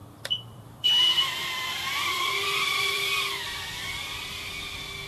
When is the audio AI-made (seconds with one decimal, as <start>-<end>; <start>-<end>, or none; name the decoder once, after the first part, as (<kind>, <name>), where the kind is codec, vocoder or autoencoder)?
0.0-0.9 (vocoder, BigVGAN v2); 1.4-4.5

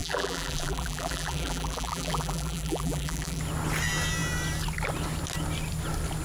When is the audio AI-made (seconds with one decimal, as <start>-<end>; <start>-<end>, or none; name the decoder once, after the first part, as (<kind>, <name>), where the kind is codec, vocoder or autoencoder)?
0.0-3.4 (vocoder, BigVGAN v2)

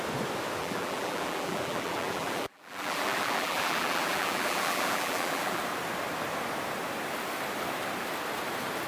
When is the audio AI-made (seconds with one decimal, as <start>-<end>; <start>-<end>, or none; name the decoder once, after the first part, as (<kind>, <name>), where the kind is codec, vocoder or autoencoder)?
0.6-5.6 (vocoder, BigVGAN v2)

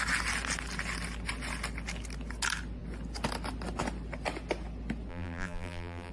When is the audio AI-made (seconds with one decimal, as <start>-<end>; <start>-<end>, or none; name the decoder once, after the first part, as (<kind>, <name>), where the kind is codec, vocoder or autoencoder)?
5.1-6.1 (vocoder, BigVGAN v2)